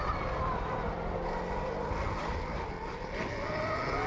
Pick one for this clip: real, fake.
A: real